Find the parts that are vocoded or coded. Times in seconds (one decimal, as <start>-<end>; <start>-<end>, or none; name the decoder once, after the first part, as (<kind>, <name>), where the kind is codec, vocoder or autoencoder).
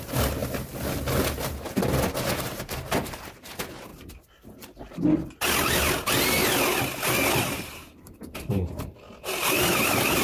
0.0-0.4 (vocoder, BigVGAN v2); 2.2-3.9; 7.3-10.2